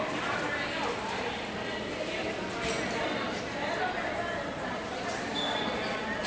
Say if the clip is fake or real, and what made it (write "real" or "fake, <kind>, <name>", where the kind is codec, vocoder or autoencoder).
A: real